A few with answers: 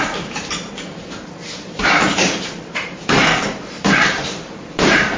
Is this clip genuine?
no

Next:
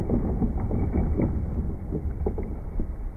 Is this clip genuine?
yes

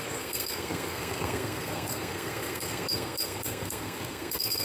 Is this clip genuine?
no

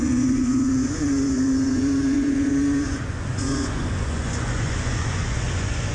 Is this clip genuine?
no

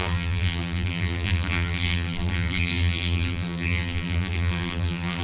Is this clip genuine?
no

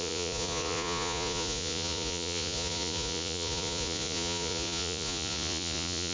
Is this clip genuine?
no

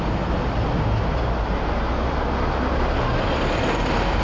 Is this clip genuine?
yes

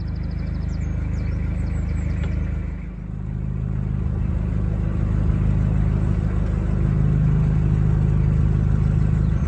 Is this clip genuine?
yes